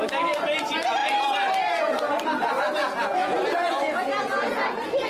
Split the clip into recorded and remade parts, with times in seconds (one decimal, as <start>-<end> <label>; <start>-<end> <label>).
0.0-3.2 recorded; 3.2-5.1 remade